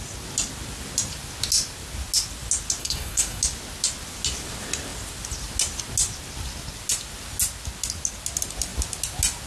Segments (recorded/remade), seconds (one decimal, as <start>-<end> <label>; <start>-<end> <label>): 0.0-2.8 recorded; 2.8-3.4 remade; 3.4-9.5 recorded